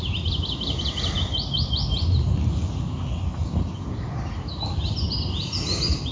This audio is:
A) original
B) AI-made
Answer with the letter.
A